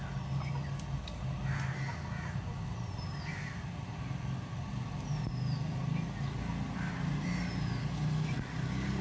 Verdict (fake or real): real